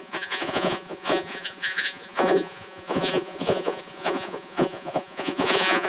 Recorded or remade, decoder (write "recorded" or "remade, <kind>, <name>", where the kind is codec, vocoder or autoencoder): remade, vocoder, Vocos